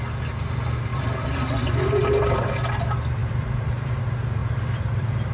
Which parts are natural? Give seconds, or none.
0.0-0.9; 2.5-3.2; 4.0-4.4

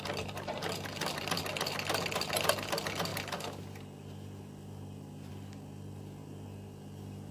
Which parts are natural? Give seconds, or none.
0.0-7.3

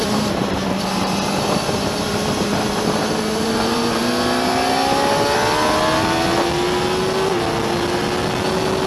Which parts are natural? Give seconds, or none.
4.0-8.9

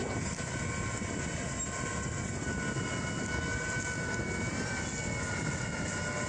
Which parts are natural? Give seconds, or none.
0.0-6.3

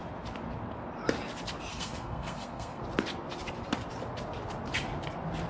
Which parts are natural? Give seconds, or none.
0.0-1.7; 2.8-5.5

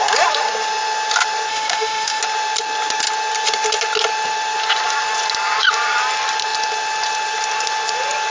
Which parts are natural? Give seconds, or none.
0.0-1.5; 2.2-8.3

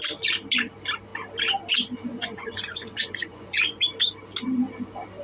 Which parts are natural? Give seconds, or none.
0.0-2.1; 3.8-5.2